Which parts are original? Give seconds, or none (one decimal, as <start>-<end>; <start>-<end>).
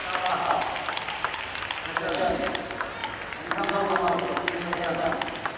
0.0-5.6